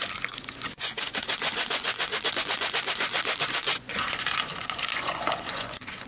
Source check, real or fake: fake